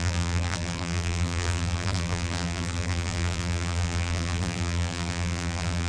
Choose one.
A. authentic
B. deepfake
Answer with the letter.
B